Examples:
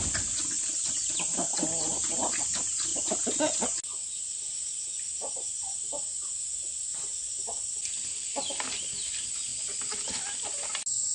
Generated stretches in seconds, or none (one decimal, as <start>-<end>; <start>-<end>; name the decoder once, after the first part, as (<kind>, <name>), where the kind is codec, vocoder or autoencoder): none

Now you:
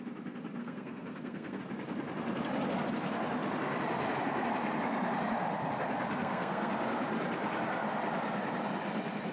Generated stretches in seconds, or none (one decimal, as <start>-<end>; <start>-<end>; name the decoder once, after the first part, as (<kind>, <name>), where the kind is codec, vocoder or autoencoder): 0.6-1.6 (codec, SNAC); 6.2-6.7

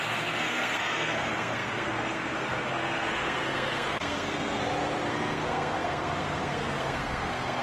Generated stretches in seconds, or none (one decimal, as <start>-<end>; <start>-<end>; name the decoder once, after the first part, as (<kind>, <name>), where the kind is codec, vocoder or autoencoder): 0.0-4.6 (codec, SNAC); 5.1-7.6

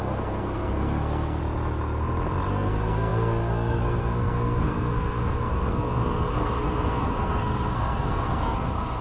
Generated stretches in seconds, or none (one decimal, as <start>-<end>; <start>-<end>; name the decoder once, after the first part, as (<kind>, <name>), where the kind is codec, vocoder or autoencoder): 0.0-1.4 (codec, SNAC); 2.5-9.0